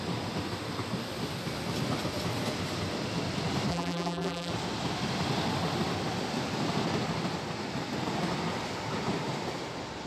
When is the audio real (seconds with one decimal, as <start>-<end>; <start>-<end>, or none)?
0.0-3.7; 4.5-10.1